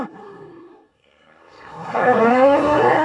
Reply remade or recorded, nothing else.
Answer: remade